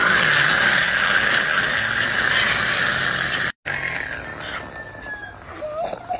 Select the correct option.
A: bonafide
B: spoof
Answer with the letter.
A